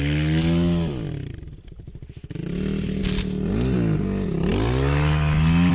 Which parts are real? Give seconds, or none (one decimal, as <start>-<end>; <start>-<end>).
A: 0.0-5.7